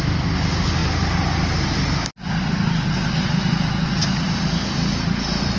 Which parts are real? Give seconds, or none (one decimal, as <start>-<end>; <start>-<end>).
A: 0.0-5.6

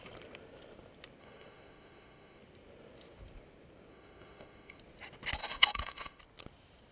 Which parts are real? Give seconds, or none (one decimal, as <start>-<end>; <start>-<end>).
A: 0.0-1.2; 2.4-3.9; 4.8-5.4; 6.2-6.9